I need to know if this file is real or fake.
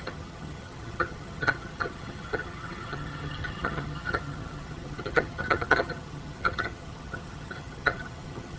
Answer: fake